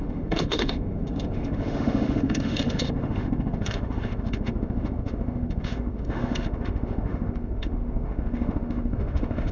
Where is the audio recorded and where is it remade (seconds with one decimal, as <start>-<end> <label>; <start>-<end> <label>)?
0.0-9.5 remade